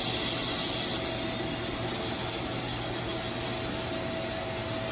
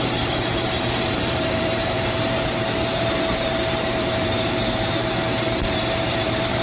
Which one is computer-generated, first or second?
second